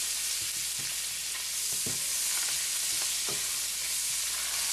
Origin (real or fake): real